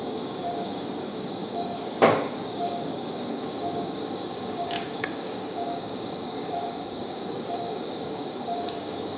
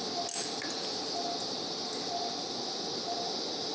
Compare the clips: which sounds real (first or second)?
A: second